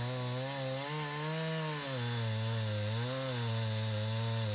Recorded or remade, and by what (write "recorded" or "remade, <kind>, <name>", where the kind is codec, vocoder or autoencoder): recorded